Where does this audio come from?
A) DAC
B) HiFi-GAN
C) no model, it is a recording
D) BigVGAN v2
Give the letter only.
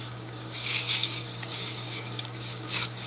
A